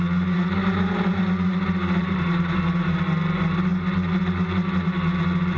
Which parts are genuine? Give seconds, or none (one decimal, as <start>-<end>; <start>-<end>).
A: 0.0-0.6; 1.2-2.0; 2.6-5.6